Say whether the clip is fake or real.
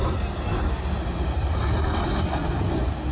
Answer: real